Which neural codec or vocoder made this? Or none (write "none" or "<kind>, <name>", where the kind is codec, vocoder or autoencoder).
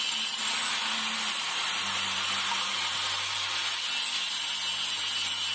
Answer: none